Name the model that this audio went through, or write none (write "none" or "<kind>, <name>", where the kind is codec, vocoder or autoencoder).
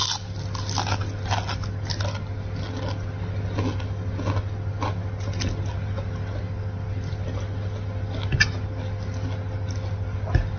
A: none